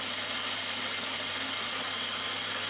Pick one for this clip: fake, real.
real